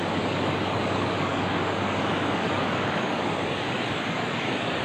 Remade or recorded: remade